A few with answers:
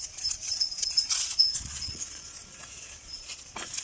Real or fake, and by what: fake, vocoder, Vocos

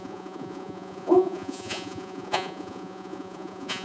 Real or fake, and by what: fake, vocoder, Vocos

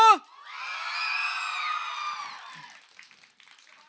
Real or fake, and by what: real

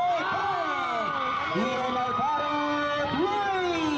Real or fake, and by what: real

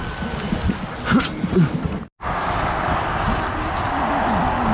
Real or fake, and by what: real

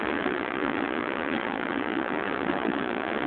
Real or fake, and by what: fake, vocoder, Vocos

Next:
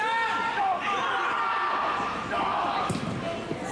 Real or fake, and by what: real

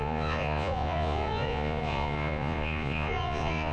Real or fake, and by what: fake, vocoder, Vocos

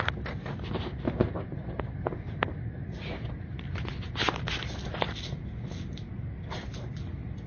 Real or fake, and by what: real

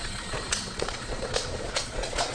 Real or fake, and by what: fake, vocoder, Vocos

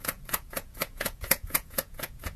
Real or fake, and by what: fake, vocoder, Vocos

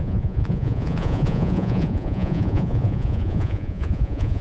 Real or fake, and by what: fake, vocoder, Vocos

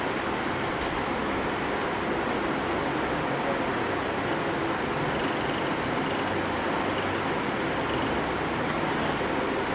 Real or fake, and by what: real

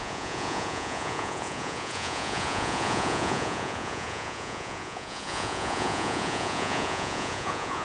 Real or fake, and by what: fake, vocoder, Vocos